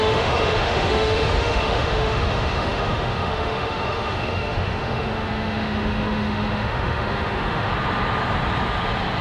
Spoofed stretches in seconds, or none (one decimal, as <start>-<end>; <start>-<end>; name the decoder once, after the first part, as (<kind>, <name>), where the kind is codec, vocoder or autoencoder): 0.0-7.7 (autoencoder, DAC-VAE)